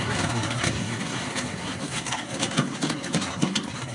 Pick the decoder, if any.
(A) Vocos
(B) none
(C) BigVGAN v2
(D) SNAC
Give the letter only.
D